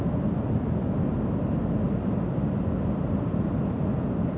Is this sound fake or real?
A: real